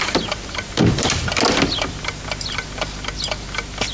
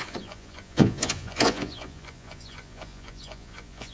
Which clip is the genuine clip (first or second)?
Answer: first